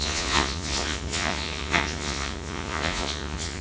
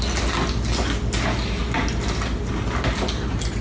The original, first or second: second